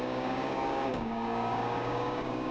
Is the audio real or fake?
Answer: fake